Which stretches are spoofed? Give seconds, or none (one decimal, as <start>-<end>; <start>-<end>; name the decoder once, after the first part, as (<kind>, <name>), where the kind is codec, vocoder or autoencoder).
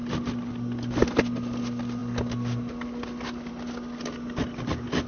none